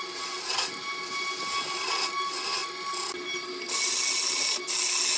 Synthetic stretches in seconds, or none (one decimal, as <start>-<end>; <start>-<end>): none